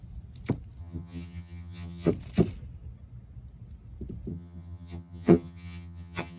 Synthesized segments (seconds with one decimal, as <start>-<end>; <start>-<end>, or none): 0.8-2.1; 4.3-6.4